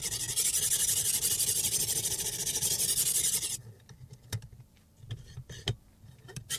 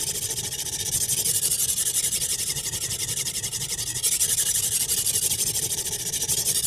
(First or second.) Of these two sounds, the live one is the first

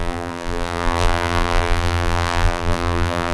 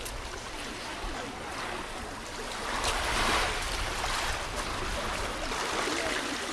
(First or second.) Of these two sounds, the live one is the second